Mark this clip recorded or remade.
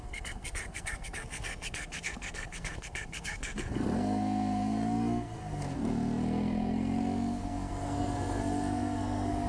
remade